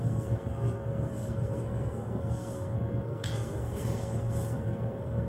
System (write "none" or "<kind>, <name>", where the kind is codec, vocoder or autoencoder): codec, SNAC